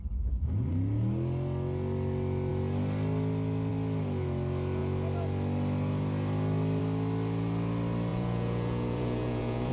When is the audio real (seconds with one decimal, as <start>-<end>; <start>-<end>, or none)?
0.0-8.1